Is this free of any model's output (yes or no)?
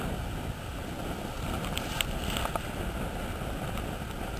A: yes